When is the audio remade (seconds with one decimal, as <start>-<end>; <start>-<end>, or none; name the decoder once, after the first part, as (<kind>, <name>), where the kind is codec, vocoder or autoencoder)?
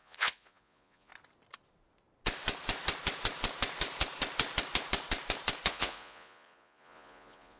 0.0-1.1 (vocoder, Vocos); 5.7-7.6